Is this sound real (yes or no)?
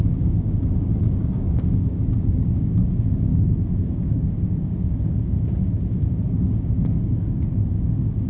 no